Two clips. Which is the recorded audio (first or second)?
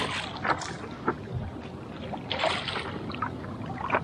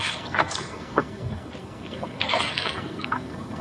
first